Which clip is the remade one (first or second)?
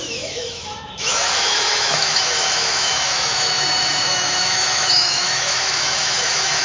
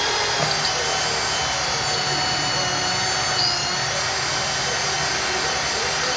first